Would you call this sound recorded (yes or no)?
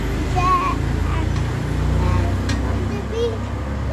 yes